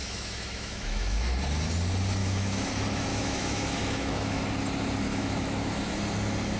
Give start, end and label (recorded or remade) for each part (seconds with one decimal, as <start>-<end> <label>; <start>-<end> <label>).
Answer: 0.0-1.2 remade; 1.2-2.2 recorded; 2.2-2.7 remade; 2.7-3.1 recorded; 3.1-4.4 remade; 4.4-5.1 recorded; 5.1-6.0 remade; 6.0-6.6 recorded